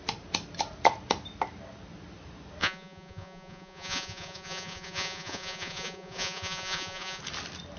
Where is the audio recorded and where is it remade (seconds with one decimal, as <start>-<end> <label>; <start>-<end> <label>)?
0.0-2.6 recorded; 2.6-7.2 remade; 7.2-7.8 recorded